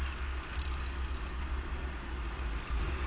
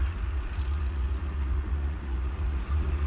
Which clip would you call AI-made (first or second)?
second